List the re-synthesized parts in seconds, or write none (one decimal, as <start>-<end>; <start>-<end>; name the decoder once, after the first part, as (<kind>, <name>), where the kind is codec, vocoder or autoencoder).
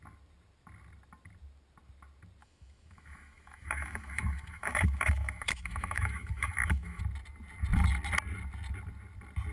2.4-7.0 (autoencoder, DAC-VAE)